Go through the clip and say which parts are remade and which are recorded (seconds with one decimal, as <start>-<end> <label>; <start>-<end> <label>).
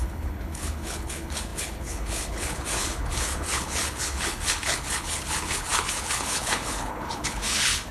0.0-7.9 remade